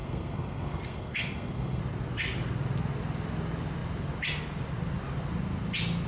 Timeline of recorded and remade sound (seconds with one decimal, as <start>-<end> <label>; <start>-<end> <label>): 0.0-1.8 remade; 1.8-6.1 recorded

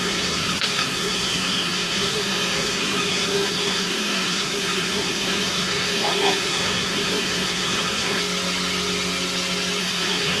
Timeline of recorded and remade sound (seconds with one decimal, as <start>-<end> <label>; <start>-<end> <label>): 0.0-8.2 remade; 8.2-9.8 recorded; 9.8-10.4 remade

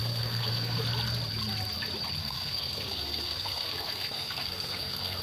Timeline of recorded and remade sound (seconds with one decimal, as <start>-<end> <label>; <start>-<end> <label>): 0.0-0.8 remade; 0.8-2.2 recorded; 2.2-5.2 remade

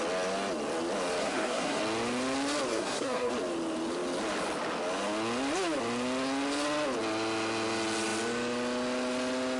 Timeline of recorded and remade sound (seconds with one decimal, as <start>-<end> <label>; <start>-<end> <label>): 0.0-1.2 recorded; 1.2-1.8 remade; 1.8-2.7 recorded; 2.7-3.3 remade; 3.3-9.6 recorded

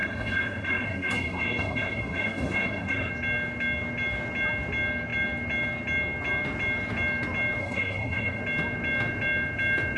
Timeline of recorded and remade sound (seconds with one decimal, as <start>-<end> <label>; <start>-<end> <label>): 0.0-3.1 remade; 3.1-7.6 recorded; 7.6-8.4 remade; 8.4-10.0 recorded